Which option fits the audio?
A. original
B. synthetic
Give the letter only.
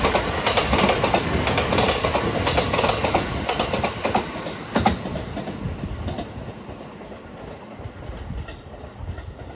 A